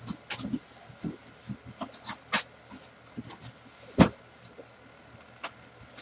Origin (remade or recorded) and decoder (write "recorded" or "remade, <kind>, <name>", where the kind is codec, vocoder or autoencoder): recorded